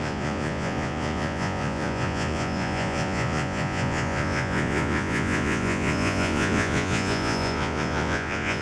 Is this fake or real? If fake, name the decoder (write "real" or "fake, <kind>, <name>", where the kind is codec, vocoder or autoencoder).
fake, vocoder, Vocos